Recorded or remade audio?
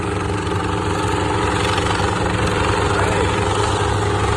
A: recorded